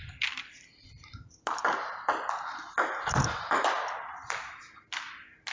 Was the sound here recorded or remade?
recorded